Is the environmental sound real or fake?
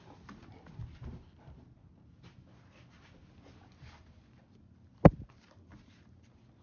real